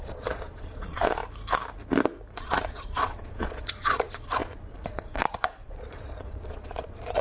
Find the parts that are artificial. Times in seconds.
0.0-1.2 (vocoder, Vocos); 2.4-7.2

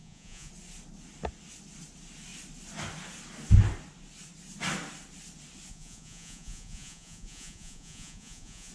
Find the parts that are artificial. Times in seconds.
0.0-0.5 (vocoder, Vocos); 5.7-8.7

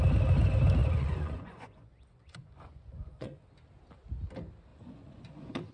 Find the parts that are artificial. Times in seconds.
0.8-3.4 (vocoder, Vocos); 4.7-5.7

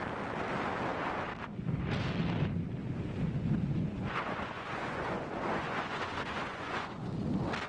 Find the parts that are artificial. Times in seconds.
2.8-7.1 (vocoder, Vocos)

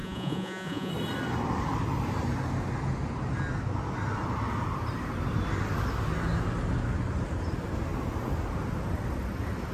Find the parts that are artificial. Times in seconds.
0.0-0.9 (vocoder, Vocos)

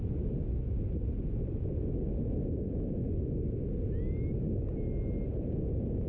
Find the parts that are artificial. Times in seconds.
none

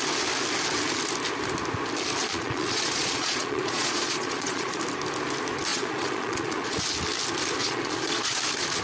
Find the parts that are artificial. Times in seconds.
2.2-4.8 (vocoder, Vocos); 5.7-6.8; 7.6-8.4

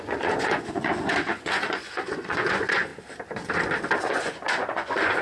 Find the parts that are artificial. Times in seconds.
0.0-2.9 (vocoder, Vocos); 4.0-5.2